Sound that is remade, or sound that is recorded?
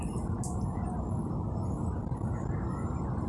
recorded